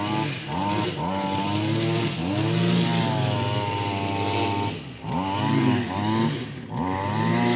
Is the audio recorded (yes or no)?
yes